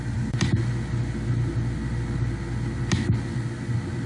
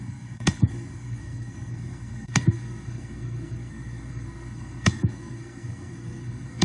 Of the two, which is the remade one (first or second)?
second